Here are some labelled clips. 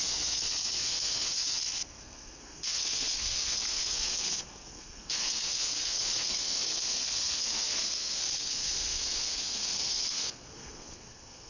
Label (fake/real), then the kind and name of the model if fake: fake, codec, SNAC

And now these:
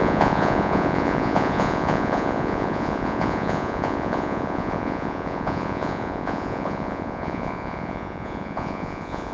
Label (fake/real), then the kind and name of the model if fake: fake, vocoder, Vocos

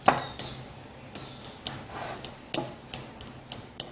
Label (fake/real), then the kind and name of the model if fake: real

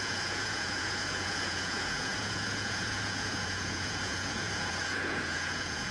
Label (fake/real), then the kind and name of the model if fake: fake, vocoder, Vocos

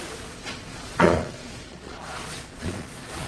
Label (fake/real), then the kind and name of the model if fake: fake, vocoder, Vocos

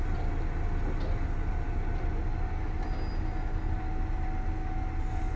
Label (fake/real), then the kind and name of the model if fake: real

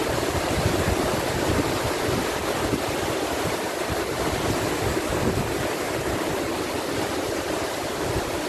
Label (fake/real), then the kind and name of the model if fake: fake, vocoder, BigVGAN v2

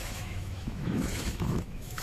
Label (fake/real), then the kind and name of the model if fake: fake, autoencoder, DAC-VAE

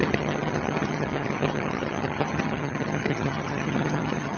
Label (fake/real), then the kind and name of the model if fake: fake, vocoder, HiFi-GAN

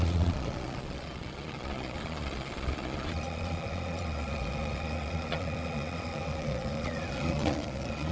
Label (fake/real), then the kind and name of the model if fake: fake, vocoder, Vocos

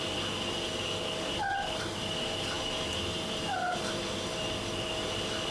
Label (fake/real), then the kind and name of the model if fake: real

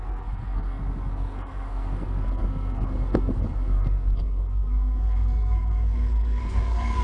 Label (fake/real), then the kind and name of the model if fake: fake, codec, SNAC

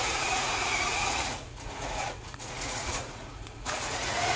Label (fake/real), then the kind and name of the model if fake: fake, vocoder, Vocos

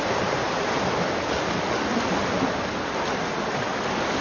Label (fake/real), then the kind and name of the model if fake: real